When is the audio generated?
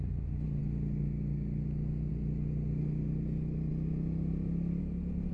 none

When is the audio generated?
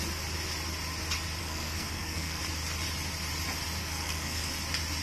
1.4-2.4 (codec, SNAC); 3.8-4.5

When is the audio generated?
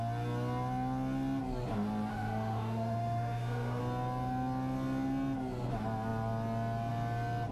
2.1-3.8 (autoencoder, DAC-VAE)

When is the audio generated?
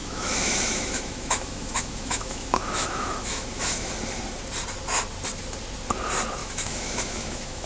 0.0-3.9 (autoencoder, DAC-VAE); 6.4-7.7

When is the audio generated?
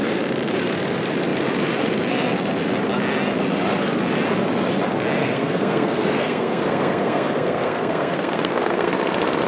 5.2-8.9 (codec, SNAC)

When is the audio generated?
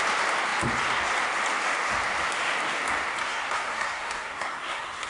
3.2-5.1 (codec, SNAC)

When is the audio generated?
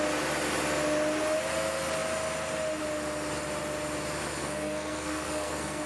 4.4-5.9 (codec, SNAC)